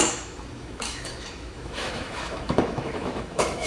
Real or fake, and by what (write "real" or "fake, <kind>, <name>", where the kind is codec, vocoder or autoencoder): fake, autoencoder, DAC-VAE